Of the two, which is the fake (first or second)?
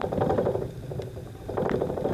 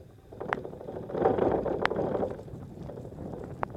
second